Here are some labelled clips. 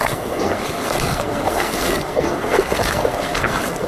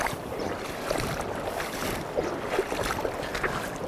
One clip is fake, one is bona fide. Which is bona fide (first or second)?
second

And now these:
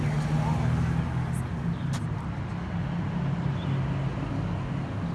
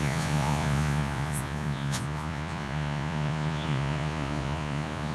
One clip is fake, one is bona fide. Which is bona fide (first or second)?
first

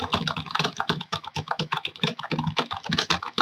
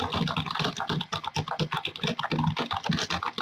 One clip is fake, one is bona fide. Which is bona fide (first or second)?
second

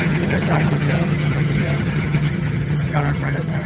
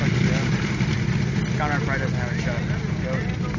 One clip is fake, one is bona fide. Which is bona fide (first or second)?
second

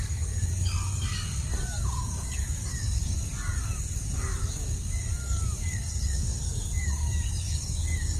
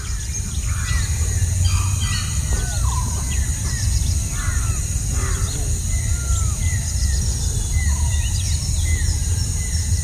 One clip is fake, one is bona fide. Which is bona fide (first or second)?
second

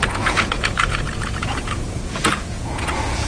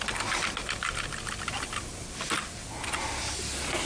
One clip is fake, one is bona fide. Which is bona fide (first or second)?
second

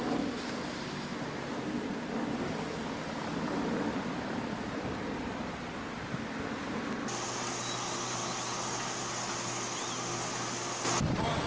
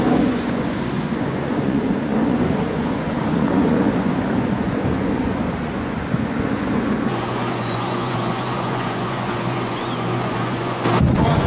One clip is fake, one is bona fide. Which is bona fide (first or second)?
first